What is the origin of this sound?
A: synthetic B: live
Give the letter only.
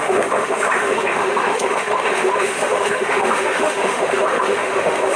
A